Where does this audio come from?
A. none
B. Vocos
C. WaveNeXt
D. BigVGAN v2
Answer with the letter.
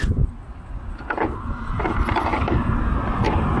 A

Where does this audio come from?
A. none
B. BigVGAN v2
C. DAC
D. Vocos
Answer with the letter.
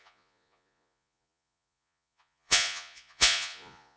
D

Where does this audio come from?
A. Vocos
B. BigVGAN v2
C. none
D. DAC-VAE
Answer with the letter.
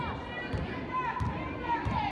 C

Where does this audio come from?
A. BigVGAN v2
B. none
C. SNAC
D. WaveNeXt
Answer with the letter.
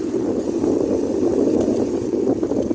B